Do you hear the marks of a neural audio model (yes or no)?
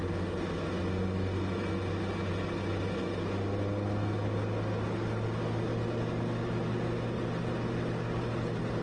no